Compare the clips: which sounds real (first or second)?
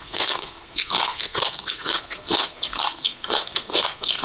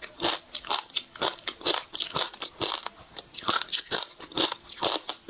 second